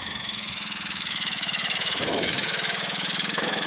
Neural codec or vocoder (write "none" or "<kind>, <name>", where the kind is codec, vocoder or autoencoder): autoencoder, DAC-VAE